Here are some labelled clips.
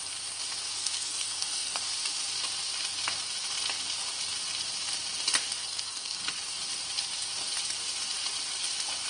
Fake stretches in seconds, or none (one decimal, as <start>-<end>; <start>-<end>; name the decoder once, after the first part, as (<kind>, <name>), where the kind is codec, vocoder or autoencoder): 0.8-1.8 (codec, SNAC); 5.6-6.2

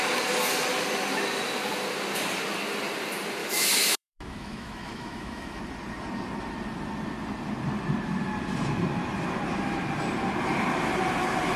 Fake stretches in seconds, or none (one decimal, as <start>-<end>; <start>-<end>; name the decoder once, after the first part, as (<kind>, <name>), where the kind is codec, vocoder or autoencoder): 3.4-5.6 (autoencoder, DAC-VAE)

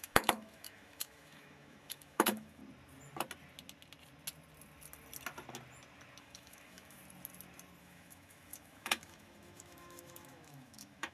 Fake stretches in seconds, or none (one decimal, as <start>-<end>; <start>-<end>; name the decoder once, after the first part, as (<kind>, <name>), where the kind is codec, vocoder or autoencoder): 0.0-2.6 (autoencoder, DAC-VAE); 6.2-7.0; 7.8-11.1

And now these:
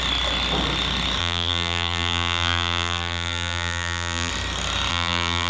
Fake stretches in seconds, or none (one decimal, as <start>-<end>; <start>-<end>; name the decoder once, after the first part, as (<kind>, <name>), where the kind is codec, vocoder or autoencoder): 1.2-4.3 (vocoder, BigVGAN v2); 4.9-5.5

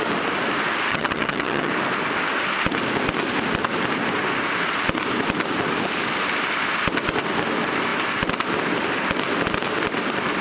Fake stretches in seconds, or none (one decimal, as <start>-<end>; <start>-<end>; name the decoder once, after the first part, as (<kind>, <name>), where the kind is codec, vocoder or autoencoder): 0.9-1.7 (vocoder, HiFi-GAN)

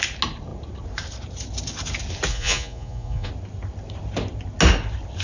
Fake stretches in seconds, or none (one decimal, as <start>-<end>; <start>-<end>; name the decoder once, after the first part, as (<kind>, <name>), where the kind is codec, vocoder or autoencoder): 2.3-3.3 (vocoder, Vocos)

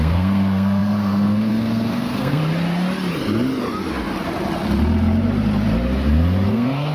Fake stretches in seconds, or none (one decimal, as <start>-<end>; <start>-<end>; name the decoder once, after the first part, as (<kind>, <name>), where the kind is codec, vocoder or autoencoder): 0.0-2.4 (codec, SNAC); 6.5-6.9